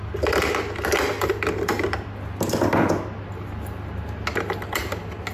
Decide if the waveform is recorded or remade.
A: recorded